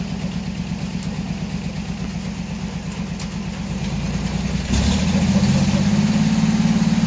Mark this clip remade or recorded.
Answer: recorded